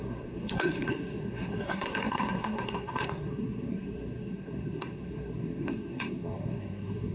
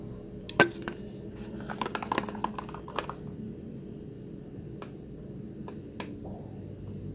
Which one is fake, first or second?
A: first